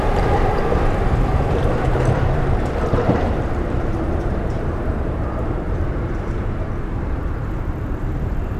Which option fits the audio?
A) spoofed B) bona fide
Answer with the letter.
A